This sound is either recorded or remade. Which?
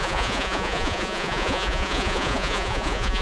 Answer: remade